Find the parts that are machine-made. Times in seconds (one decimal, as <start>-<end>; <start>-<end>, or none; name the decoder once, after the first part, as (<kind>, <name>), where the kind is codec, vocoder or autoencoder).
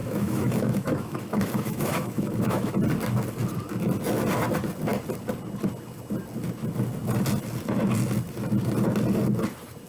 0.0-2.7 (autoencoder, DAC-VAE)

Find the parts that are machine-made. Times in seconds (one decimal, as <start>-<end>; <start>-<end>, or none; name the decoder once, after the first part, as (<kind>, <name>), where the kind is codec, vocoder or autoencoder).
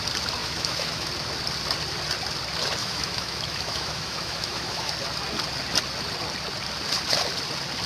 0.4-1.1 (autoencoder, DAC-VAE); 2.8-4.9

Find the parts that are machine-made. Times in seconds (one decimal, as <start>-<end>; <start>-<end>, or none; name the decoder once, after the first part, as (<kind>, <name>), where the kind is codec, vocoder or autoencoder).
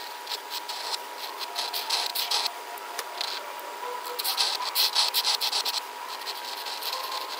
none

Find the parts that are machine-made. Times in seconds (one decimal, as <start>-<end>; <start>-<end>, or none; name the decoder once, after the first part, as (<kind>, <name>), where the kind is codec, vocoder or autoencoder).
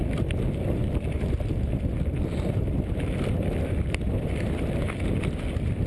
none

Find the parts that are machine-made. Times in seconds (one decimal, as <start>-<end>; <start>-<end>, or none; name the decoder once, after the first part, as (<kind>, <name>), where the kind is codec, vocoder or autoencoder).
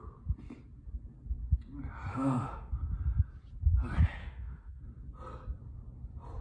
2.1-2.7 (autoencoder, DAC-VAE); 4.2-4.8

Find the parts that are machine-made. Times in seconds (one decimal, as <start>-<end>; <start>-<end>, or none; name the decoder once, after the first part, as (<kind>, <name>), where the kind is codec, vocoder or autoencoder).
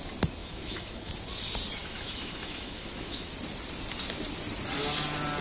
0.4-1.1 (autoencoder, DAC-VAE); 1.8-3.3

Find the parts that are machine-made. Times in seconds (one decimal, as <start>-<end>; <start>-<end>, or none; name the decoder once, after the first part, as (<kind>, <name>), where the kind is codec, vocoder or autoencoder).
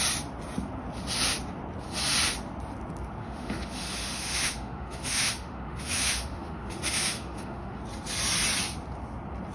3.2-7.8 (autoencoder, DAC-VAE)